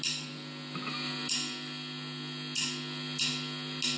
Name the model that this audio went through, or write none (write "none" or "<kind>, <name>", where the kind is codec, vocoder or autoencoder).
none